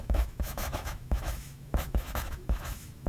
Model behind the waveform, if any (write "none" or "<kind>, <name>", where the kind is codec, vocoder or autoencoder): autoencoder, DAC-VAE